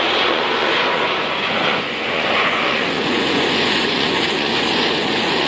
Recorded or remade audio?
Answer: remade